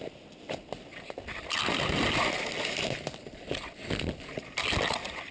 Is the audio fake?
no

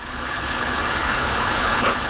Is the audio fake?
yes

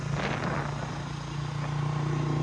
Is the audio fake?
no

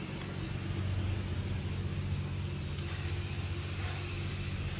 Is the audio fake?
no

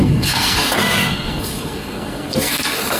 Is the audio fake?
yes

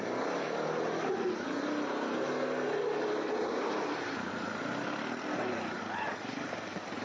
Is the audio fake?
no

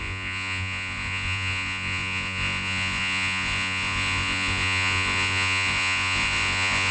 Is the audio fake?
yes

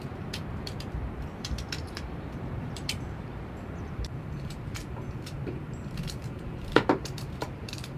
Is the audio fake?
yes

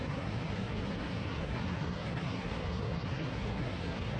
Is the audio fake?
yes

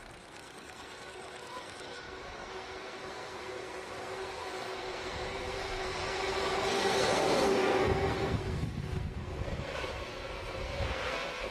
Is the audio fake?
yes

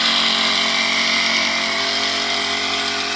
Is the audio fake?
no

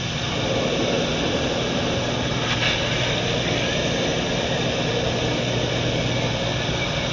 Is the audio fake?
no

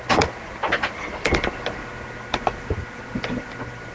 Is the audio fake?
no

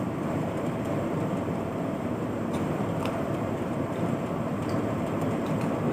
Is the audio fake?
yes